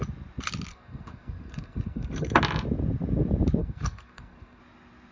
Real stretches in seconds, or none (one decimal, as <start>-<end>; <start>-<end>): 0.0-0.7; 2.4-3.6; 4.6-5.1